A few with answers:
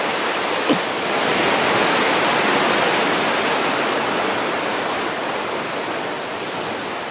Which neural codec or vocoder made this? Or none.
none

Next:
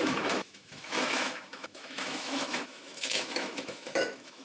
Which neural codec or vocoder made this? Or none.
autoencoder, DAC-VAE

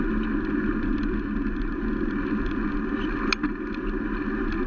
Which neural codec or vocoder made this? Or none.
none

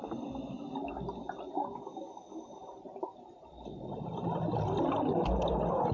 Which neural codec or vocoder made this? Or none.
none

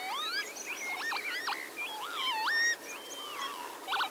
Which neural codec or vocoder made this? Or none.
none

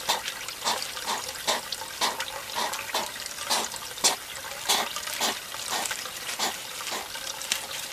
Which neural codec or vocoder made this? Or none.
none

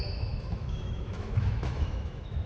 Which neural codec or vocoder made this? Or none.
autoencoder, DAC-VAE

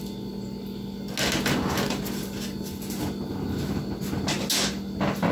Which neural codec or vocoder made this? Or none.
none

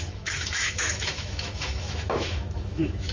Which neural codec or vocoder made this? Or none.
autoencoder, DAC-VAE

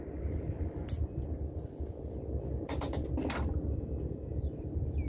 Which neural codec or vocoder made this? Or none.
none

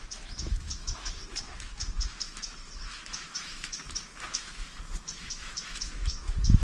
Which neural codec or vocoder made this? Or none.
autoencoder, DAC-VAE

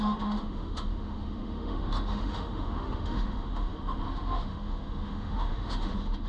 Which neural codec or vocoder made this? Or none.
autoencoder, DAC-VAE